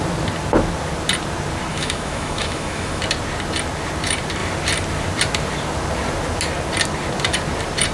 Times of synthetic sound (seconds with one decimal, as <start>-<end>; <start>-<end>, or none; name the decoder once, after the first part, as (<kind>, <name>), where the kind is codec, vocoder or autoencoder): 1.7-3.0 (autoencoder, DAC-VAE)